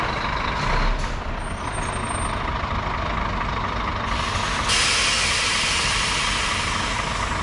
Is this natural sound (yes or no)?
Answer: yes